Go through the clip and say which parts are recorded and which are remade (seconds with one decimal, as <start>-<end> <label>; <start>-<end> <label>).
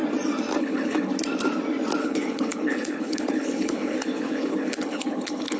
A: 0.0-0.6 recorded; 0.6-1.1 remade; 1.1-2.0 recorded; 2.0-5.6 remade